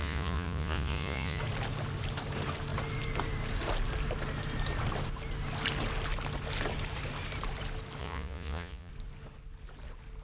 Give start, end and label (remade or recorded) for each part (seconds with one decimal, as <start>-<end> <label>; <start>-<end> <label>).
0.0-1.4 remade; 1.4-8.0 recorded; 8.0-8.9 remade; 8.9-10.2 recorded